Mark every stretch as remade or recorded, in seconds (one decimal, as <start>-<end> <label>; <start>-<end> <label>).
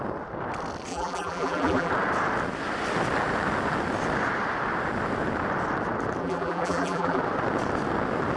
0.0-0.9 recorded; 0.9-1.9 remade; 1.9-6.2 recorded; 6.2-7.2 remade; 7.2-8.4 recorded